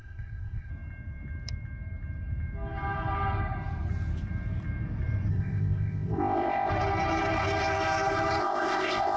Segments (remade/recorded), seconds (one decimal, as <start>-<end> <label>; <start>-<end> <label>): 0.0-0.7 remade; 0.7-5.3 recorded; 5.3-6.7 remade; 6.7-8.4 recorded; 8.4-9.2 remade